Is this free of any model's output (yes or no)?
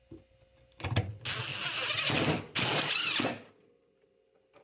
yes